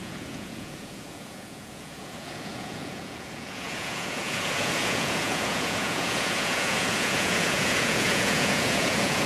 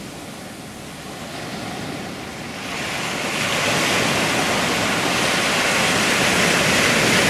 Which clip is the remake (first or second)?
first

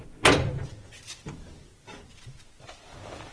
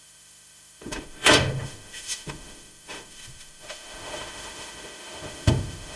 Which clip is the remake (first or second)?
second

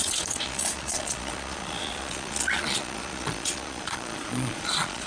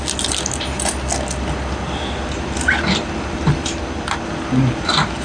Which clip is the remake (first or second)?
first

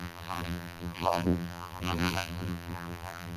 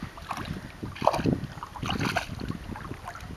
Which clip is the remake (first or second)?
first